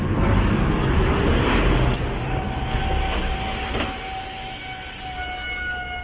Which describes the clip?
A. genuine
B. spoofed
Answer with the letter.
A